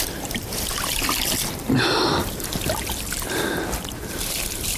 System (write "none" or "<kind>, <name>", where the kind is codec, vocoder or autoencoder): none